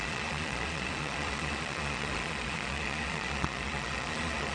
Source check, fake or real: fake